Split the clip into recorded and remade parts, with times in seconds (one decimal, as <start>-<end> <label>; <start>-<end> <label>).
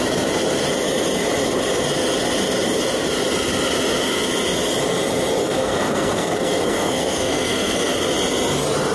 0.0-5.4 recorded; 5.4-7.9 remade; 7.9-8.9 recorded